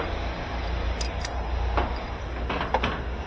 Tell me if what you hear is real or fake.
real